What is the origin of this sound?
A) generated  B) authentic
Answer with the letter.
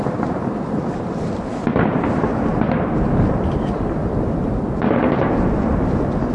B